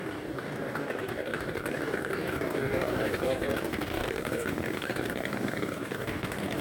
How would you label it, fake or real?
fake